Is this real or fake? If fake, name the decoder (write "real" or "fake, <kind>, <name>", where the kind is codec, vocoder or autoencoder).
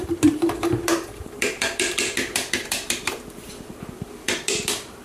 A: fake, vocoder, BigVGAN v2